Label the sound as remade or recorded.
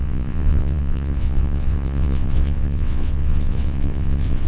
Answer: remade